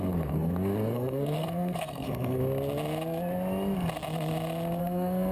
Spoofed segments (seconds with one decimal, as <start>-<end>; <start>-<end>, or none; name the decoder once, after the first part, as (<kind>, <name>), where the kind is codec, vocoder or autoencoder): 0.0-2.4 (codec, SNAC); 4.8-5.3